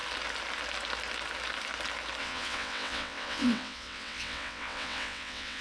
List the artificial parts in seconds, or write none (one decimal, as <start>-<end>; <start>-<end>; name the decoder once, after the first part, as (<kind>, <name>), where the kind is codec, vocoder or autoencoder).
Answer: 2.2-5.6 (vocoder, WaveNeXt)